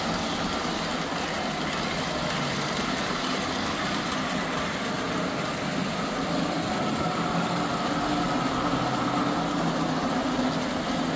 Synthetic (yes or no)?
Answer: no